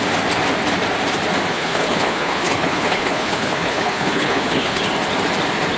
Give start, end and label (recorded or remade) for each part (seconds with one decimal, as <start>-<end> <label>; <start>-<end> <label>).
0.0-1.5 recorded; 1.5-4.8 remade; 4.8-5.8 recorded